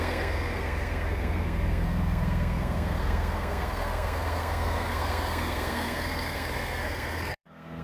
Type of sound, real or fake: fake